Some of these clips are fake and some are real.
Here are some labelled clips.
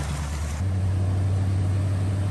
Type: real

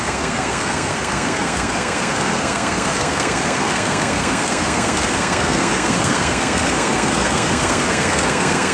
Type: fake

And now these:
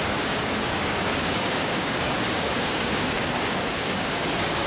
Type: fake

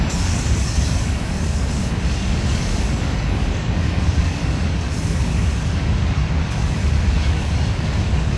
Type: fake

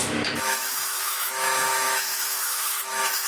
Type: fake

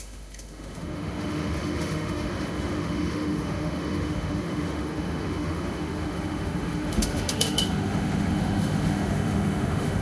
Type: fake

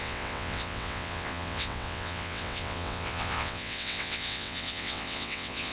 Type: fake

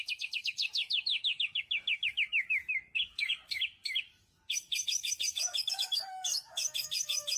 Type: fake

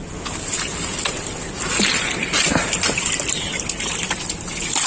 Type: real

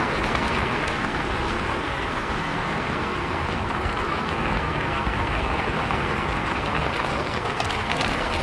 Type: fake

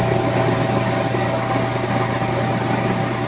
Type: real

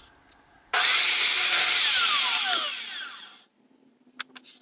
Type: real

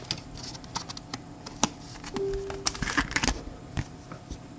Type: real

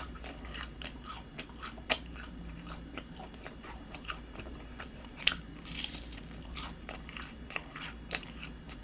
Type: fake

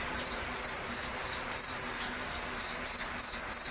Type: fake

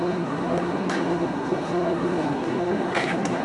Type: fake